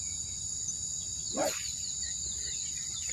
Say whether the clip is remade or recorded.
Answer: recorded